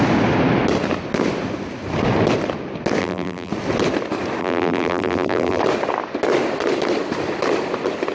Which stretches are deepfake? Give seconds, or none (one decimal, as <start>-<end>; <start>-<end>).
3.0-3.5; 4.4-5.6